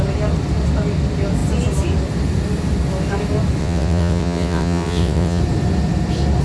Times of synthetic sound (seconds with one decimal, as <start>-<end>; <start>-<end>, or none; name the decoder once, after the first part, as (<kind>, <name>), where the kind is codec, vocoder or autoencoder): 3.6-5.4 (vocoder, WaveNeXt)

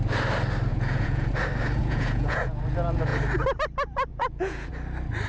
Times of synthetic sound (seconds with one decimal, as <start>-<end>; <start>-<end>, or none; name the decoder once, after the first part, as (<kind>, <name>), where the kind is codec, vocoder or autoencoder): 0.7-1.3 (vocoder, Vocos); 1.8-2.6; 4.1-4.7

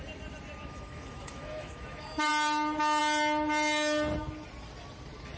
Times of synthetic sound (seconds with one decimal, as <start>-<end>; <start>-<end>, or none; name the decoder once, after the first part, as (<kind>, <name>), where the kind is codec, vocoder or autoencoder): 0.6-2.3 (autoencoder, DAC-VAE)

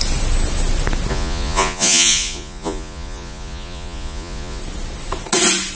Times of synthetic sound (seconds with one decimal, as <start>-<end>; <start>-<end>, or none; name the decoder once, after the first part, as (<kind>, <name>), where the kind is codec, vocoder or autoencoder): 1.1-4.6 (vocoder, Vocos)

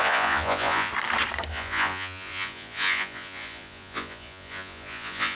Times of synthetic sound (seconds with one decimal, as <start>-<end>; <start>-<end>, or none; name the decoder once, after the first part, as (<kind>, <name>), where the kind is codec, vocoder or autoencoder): 0.0-0.9 (vocoder, Vocos); 1.5-5.3

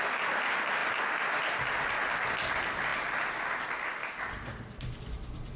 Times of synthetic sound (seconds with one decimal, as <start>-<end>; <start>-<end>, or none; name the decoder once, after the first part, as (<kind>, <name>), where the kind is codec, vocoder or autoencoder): 4.0-5.0 (vocoder, BigVGAN v2)

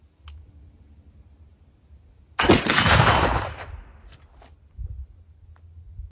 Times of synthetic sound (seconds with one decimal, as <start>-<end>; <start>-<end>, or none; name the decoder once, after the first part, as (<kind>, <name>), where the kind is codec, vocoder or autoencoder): none

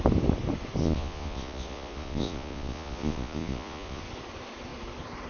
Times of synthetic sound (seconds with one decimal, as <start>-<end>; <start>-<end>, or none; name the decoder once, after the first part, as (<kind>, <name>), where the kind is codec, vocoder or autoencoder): 0.8-4.0 (vocoder, Vocos)